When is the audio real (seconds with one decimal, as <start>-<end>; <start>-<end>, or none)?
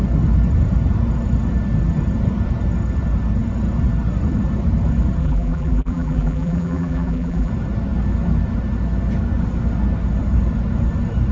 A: 0.0-5.2; 7.5-11.3